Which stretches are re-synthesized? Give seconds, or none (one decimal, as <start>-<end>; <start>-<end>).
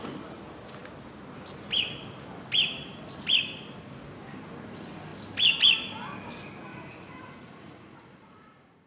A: 6.7-8.9